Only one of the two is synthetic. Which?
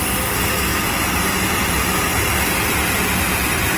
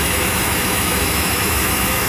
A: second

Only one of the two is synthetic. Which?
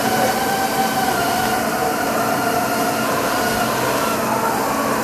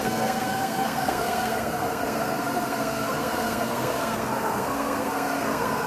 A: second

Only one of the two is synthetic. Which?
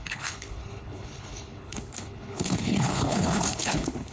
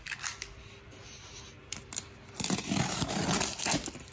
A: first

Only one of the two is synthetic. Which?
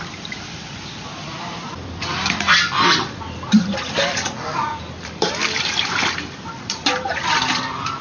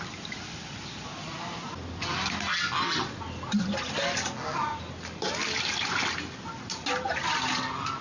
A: first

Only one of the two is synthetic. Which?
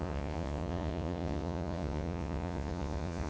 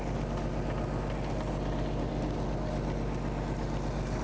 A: first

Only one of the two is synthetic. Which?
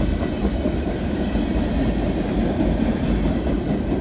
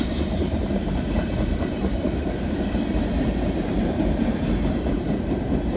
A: second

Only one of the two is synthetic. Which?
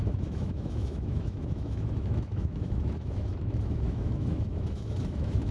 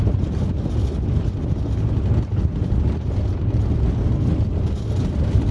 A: first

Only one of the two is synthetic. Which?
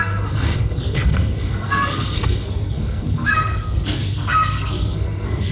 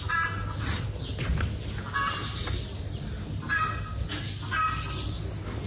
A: first